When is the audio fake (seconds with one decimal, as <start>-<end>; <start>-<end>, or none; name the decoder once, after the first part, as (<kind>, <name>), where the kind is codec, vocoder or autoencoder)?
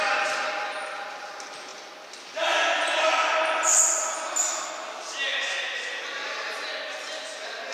none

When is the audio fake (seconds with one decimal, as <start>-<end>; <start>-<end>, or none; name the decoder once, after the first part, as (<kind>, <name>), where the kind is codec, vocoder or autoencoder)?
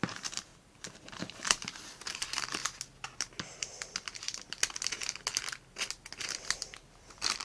0.0-0.5 (vocoder, BigVGAN v2); 1.1-2.6; 7.0-7.4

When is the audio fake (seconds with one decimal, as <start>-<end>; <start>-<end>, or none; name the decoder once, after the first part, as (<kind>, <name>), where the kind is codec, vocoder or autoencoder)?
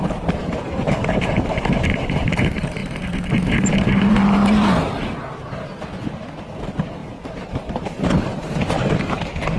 0.0-2.8 (vocoder, BigVGAN v2); 3.7-4.4; 6.6-9.6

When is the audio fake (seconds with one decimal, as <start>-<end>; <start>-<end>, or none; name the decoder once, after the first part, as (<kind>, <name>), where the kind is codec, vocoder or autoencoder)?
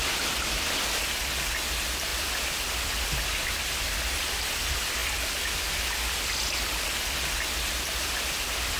none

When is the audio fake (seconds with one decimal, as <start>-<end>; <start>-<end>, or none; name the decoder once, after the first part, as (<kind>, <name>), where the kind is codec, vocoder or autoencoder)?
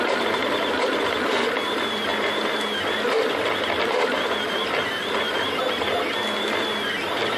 none